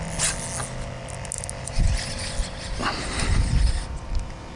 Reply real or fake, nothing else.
real